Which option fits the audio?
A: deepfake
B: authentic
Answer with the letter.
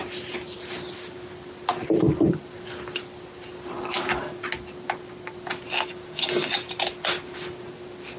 B